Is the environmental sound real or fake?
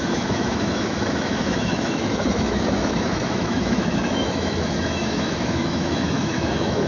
fake